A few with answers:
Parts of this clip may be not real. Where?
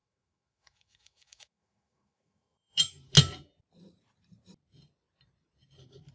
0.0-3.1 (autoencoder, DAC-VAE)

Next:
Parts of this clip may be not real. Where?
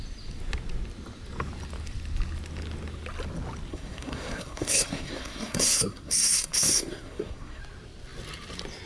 3.7-7.6 (codec, SNAC)